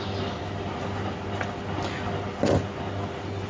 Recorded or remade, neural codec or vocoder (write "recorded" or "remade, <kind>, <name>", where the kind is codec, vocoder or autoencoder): recorded